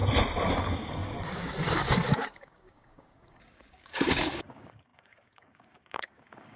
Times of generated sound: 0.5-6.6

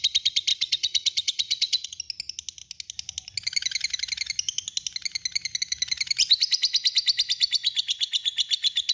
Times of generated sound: 0.5-2.0

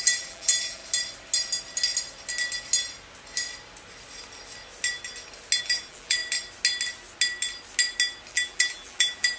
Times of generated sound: 0.0-0.8; 5.6-6.2; 8.3-9.4

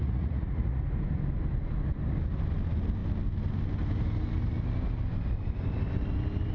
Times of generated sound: 0.0-0.8

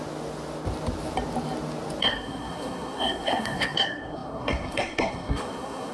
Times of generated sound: 2.0-5.9

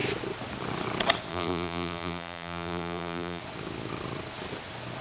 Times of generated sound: 1.3-3.4

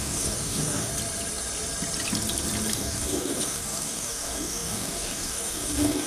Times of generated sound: 0.0-0.9; 2.7-6.1

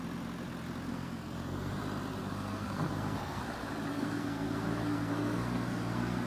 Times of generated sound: 0.9-1.8; 2.2-3.4; 3.9-6.3